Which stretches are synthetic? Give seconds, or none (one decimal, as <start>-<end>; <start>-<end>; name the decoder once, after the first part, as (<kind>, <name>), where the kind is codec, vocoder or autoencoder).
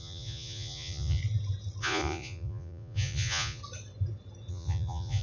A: 0.0-1.2 (vocoder, Vocos); 1.8-3.6; 4.5-5.2